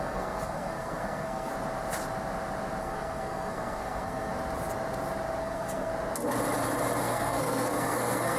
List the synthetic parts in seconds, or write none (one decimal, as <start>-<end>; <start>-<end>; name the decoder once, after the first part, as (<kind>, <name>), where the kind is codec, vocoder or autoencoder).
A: 0.0-1.5 (codec, SNAC); 2.8-4.3; 5.4-5.9; 7.0-8.4